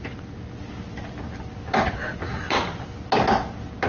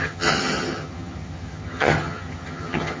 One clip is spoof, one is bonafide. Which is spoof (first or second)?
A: second